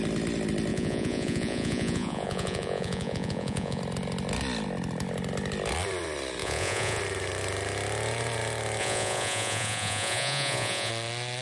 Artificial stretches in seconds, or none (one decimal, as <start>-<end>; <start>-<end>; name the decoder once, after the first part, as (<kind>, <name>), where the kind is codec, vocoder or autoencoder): 0.7-3.8 (vocoder, Vocos); 6.4-7.0; 8.8-10.9